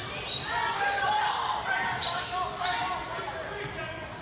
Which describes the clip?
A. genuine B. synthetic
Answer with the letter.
A